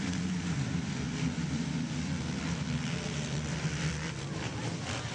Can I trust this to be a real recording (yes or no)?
no